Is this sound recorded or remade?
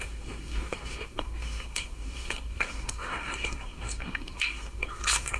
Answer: remade